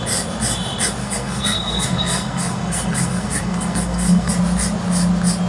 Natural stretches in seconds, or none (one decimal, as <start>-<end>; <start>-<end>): 0.0-1.0; 4.3-5.5